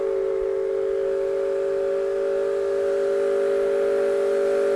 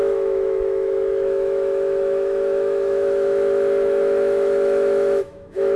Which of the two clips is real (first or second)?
first